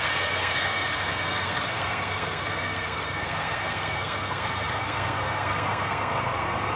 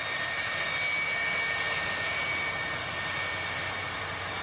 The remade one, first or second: first